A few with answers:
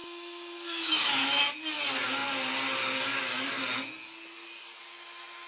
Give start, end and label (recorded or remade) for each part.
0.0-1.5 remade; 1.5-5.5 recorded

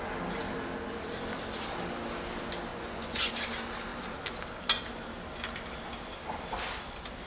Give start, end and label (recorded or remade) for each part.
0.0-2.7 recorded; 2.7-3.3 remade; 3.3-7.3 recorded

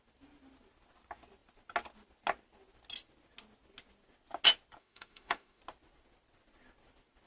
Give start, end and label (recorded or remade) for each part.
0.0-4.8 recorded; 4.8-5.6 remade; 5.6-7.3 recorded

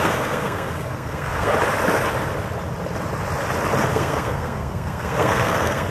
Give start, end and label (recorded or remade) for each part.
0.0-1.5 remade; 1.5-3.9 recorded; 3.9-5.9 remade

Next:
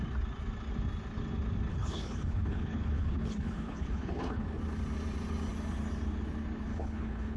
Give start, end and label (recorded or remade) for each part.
0.0-1.7 recorded; 1.7-4.6 remade; 4.6-6.7 recorded; 6.7-7.4 remade